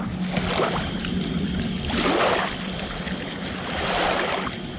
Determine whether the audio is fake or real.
real